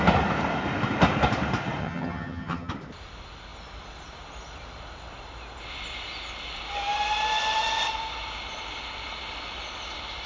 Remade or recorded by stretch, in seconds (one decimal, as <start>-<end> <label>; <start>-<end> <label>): 0.0-1.8 recorded; 1.8-2.7 remade; 2.7-10.3 recorded

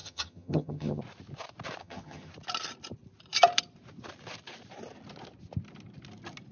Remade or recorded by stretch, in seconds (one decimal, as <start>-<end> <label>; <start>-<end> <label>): 0.0-1.0 remade; 1.0-1.8 recorded; 1.8-2.3 remade; 2.3-6.5 recorded